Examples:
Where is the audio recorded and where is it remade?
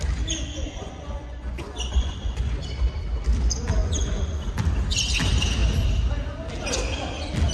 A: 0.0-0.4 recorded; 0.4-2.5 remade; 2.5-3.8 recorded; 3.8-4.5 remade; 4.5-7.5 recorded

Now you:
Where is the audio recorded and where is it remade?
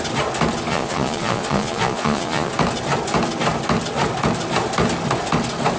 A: 0.0-0.7 recorded; 0.7-2.5 remade; 2.5-5.8 recorded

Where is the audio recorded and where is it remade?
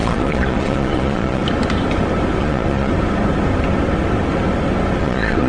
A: 0.0-1.4 remade; 1.4-2.4 recorded; 2.4-2.9 remade; 2.9-5.0 recorded; 5.0-5.5 remade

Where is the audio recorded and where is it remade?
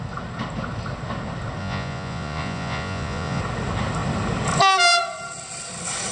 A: 0.0-1.6 recorded; 1.6-3.4 remade; 3.4-6.1 recorded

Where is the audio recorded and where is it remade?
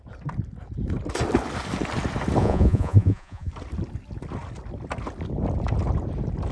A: 0.0-2.4 recorded; 2.4-3.5 remade; 3.5-6.5 recorded